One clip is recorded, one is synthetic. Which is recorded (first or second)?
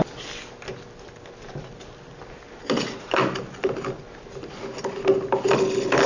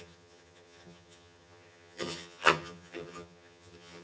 first